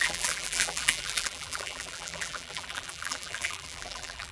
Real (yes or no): no